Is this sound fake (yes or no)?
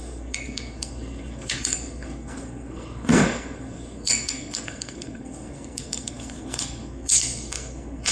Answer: yes